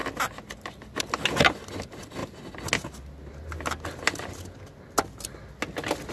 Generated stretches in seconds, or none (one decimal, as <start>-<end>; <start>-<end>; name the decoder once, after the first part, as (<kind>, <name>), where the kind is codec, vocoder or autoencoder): 0.0-1.0 (vocoder, BigVGAN v2)